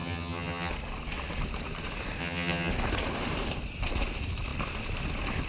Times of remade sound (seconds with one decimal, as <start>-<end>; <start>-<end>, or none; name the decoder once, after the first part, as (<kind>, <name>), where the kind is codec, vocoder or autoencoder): 0.0-0.7 (vocoder, HiFi-GAN); 2.2-2.7